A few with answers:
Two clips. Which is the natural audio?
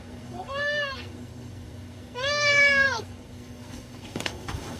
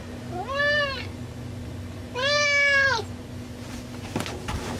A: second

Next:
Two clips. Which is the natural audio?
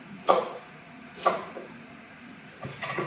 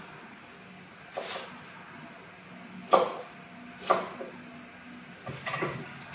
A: second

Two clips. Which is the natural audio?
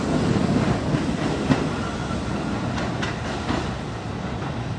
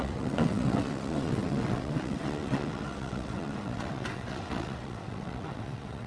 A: first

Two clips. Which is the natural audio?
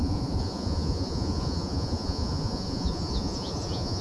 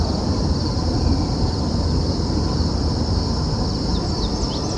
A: second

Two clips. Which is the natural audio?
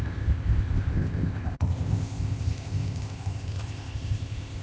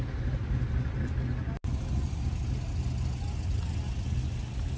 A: second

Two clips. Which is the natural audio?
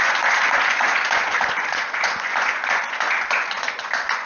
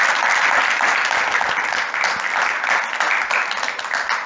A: second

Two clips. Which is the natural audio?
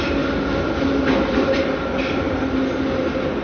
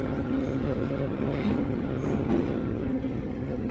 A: first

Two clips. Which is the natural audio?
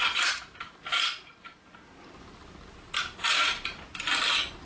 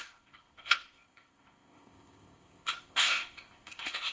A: first